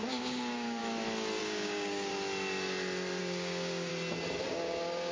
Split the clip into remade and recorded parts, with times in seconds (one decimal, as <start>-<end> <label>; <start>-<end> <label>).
0.0-0.8 remade; 0.8-1.4 recorded; 1.4-2.1 remade; 2.1-3.2 recorded; 3.2-3.9 remade; 3.9-4.4 recorded; 4.4-5.1 remade